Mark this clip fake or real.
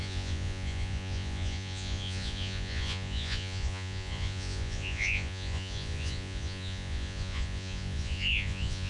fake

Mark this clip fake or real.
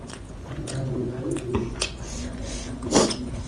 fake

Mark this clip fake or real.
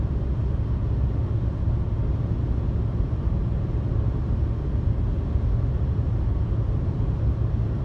real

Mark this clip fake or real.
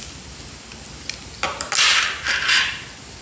real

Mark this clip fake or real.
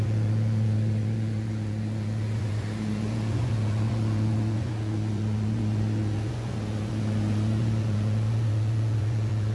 fake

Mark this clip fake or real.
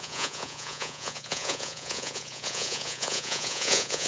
fake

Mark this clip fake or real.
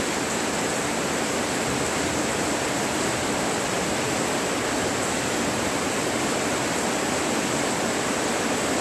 real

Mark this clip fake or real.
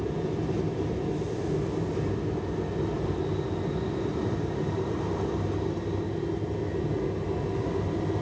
real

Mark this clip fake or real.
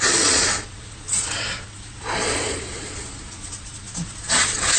fake